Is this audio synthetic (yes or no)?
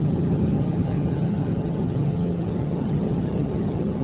yes